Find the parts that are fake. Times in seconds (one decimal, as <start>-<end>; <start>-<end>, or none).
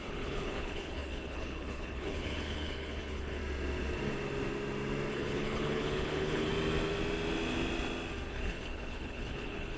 0.0-3.4; 5.1-6.5; 8.3-9.8